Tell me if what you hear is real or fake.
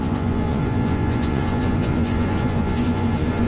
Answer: fake